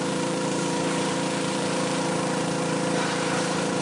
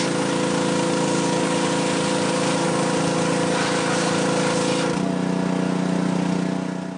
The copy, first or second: first